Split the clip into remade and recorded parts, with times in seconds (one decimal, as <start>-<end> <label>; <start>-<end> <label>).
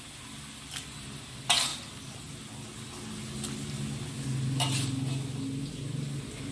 0.0-6.5 recorded